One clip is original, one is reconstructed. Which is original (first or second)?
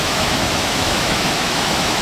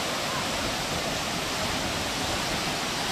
second